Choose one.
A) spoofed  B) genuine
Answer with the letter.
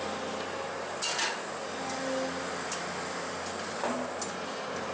B